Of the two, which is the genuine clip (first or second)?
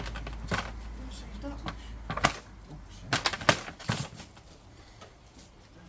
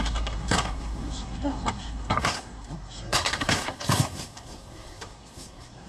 first